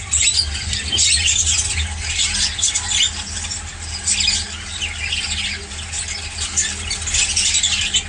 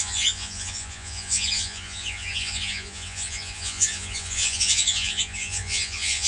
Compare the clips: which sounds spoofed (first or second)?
second